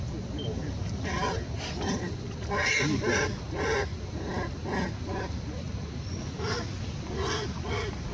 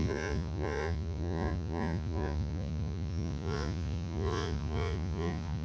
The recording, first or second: first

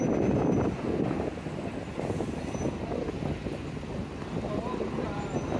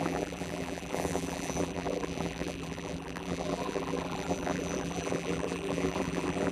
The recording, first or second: first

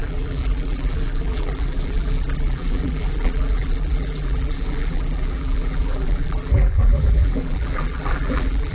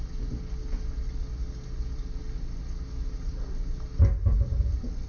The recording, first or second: second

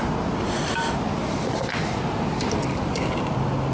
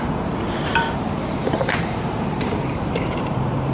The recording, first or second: first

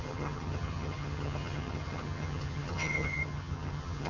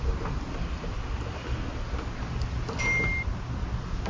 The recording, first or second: second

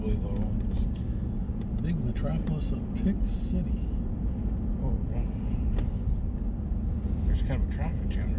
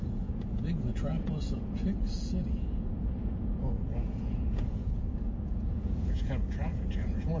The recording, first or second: first